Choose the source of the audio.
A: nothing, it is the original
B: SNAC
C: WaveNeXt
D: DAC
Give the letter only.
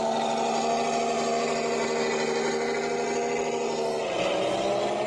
A